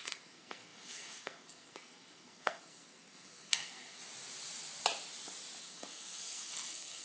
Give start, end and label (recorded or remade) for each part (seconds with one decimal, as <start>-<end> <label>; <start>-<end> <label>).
0.0-4.0 remade; 4.0-5.6 recorded; 5.6-7.0 remade